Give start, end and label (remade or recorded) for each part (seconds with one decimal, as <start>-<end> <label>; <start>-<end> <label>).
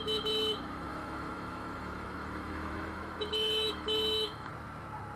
0.0-4.5 remade; 4.5-5.2 recorded